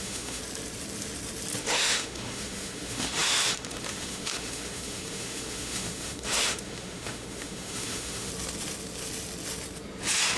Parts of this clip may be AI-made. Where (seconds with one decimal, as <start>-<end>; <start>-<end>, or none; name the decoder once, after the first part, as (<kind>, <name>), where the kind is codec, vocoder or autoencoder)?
0.0-0.4 (autoencoder, DAC-VAE); 1.6-8.3